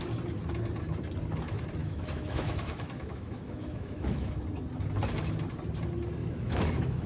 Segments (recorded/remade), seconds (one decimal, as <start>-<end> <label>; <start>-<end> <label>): 0.0-1.8 recorded; 1.8-4.4 remade; 4.4-6.2 recorded; 6.2-7.1 remade